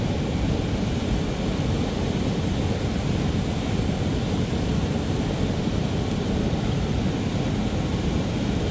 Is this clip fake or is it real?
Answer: real